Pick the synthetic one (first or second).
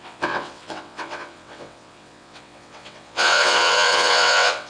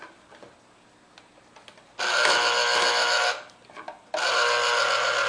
first